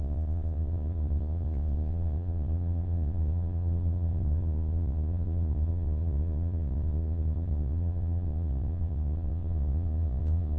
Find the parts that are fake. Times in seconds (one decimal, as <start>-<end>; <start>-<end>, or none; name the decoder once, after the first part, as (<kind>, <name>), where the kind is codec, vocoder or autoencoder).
0.0-10.6 (vocoder, Vocos)